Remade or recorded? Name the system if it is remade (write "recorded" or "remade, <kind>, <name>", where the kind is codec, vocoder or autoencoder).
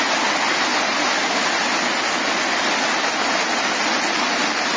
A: recorded